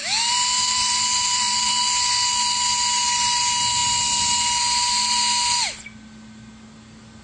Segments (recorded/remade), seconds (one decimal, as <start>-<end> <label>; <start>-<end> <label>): 0.0-1.8 remade; 1.8-7.2 recorded